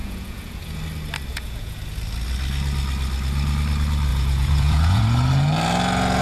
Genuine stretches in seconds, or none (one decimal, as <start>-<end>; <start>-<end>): 0.8-1.3; 1.8-4.1; 5.0-6.2